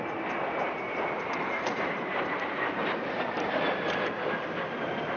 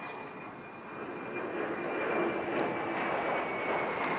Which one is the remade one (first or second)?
first